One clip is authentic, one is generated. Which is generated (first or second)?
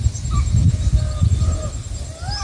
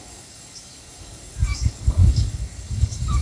second